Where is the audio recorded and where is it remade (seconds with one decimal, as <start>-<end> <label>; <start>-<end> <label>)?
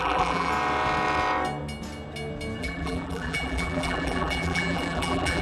0.0-0.5 remade; 0.5-2.6 recorded; 2.6-5.4 remade